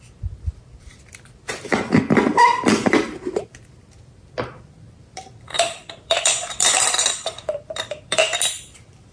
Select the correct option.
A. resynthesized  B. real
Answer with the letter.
A